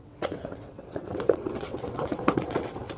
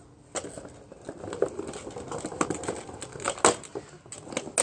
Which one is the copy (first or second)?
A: first